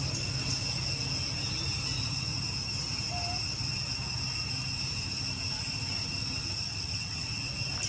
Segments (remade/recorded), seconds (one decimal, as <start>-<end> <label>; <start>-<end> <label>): 0.0-6.7 recorded; 6.7-7.4 remade; 7.4-7.9 recorded